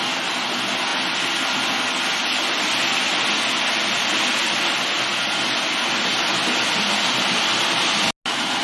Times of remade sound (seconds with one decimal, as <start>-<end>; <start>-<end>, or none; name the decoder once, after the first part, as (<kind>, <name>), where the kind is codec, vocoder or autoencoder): none